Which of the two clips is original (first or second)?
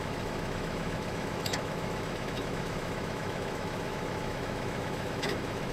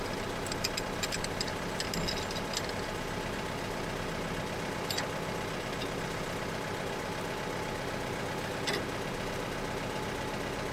second